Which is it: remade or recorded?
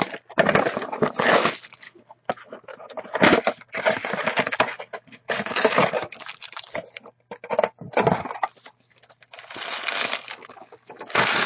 recorded